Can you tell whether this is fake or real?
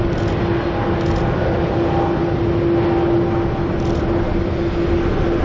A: real